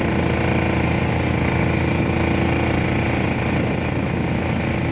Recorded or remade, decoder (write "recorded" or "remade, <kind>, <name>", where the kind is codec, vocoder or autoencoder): recorded